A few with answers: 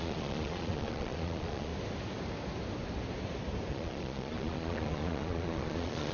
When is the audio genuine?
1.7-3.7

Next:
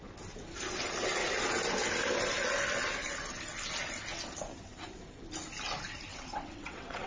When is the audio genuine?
0.0-6.1

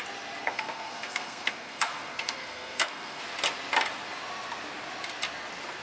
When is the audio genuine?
0.0-0.4; 3.2-5.8

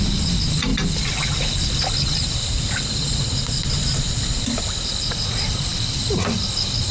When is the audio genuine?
0.0-6.9

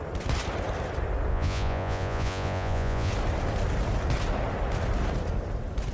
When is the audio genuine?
0.0-1.3; 3.1-5.9

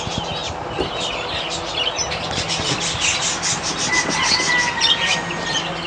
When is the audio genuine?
0.0-5.9

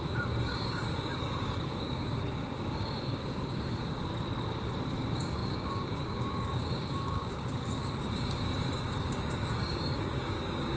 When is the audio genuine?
4.1-4.9

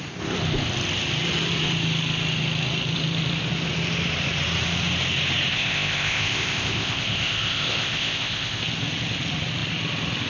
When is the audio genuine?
0.0-5.5; 8.6-10.3